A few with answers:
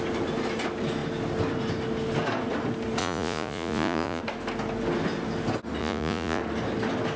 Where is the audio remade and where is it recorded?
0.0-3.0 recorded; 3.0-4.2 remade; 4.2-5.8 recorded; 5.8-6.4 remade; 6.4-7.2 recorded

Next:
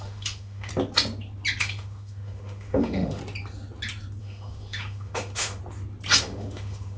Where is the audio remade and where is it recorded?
0.0-0.7 remade; 0.7-1.6 recorded; 1.6-3.2 remade; 3.2-4.2 recorded; 4.2-5.6 remade; 5.6-6.2 recorded; 6.2-7.0 remade